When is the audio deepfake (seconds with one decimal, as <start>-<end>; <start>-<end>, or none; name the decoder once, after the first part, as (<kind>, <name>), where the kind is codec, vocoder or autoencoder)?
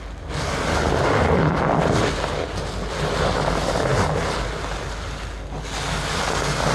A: none